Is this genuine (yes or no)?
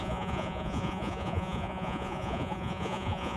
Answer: no